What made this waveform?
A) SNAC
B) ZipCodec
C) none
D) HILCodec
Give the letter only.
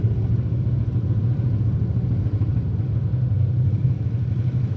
C